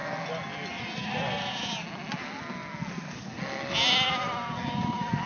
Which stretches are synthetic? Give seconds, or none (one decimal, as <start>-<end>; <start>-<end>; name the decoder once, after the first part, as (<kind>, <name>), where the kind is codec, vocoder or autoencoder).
none